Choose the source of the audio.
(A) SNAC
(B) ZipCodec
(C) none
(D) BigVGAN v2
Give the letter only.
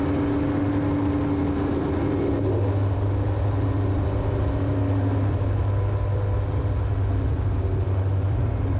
C